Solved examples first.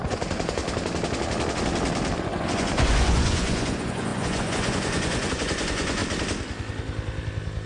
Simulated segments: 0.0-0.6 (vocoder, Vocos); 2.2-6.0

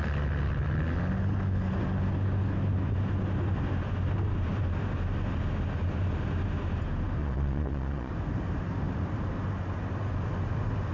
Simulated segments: 7.2-8.1 (vocoder, Vocos)

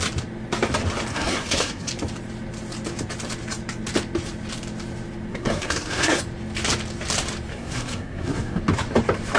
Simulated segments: 1.1-1.9 (codec, SNAC); 5.3-6.2; 7.5-8.6

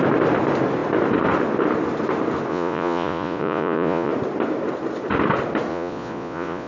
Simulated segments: 2.5-4.1 (vocoder, Vocos); 5.7-6.7

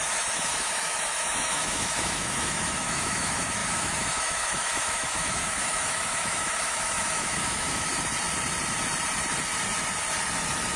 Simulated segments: 0.0-7.9 (autoencoder, DAC-VAE)

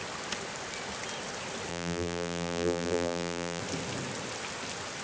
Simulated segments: 1.7-3.6 (vocoder, BigVGAN v2)

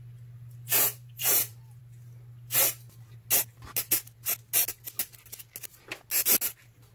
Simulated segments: 0.7-1.8 (vocoder, BigVGAN v2)

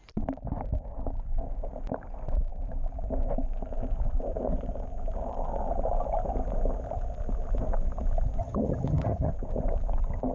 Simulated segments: 8.4-9.3 (vocoder, HiFi-GAN)